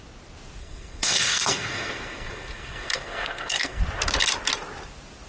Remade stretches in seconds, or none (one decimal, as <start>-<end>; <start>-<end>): 0.6-3.8